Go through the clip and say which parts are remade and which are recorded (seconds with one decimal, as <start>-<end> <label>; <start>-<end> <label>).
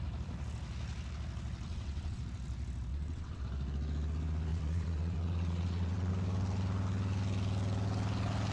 0.0-1.7 recorded; 1.7-2.2 remade; 2.2-2.9 recorded; 2.9-3.4 remade; 3.4-4.5 recorded; 4.5-6.1 remade; 6.1-8.5 recorded